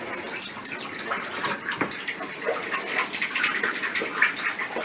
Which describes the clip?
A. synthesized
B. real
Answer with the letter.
B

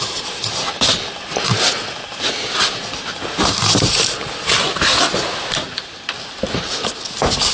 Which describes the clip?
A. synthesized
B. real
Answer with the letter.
B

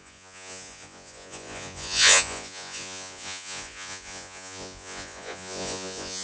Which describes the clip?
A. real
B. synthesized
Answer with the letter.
B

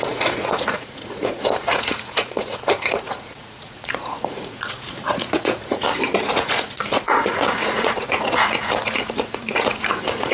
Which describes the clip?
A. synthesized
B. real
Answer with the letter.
A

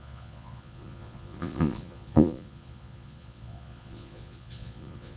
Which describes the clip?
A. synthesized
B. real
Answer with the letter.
A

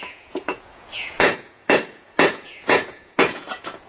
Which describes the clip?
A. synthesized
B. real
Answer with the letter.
A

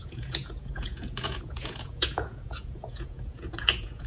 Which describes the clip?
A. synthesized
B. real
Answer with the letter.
A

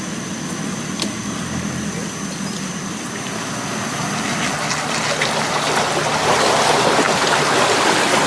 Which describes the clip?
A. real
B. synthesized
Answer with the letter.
A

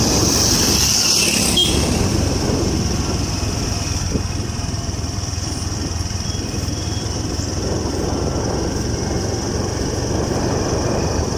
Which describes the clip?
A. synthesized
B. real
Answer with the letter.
B